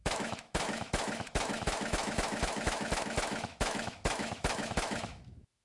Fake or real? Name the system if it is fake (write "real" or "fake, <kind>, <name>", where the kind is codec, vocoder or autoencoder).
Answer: fake, autoencoder, DAC-VAE